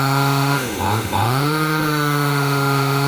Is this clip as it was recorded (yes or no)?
no